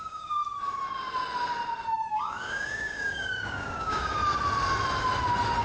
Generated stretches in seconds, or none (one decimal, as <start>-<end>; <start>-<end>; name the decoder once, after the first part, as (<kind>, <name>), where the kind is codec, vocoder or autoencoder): 0.0-0.4 (codec, DAC); 2.1-4.2